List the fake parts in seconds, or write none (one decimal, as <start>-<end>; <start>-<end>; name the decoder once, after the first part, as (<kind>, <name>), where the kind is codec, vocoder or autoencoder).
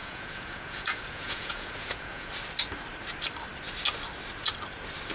0.0-2.3 (vocoder, Vocos)